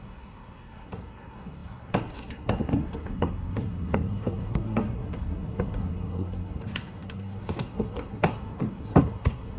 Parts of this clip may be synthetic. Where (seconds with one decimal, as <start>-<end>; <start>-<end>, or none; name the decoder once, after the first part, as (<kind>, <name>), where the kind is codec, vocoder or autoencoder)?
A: 0.0-9.6 (codec, SNAC)